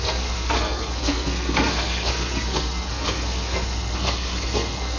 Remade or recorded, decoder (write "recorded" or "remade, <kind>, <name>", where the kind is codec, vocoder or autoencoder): remade, codec, SNAC